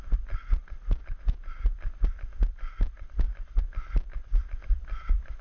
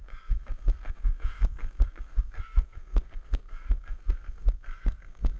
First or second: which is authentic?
first